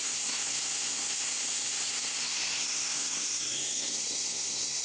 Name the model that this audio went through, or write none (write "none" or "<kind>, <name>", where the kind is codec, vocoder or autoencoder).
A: codec, SNAC